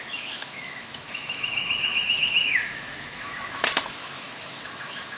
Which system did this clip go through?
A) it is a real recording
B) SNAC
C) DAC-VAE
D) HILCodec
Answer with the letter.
C